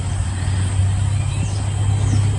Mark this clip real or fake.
real